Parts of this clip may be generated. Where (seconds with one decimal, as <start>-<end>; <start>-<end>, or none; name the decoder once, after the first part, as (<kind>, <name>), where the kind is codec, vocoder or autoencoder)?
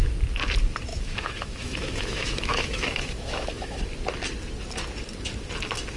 0.9-3.8 (autoencoder, DAC-VAE)